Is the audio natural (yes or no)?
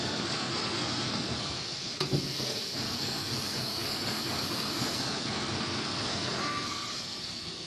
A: no